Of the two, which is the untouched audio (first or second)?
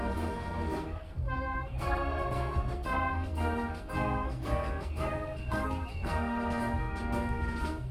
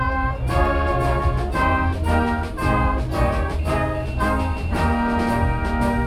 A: second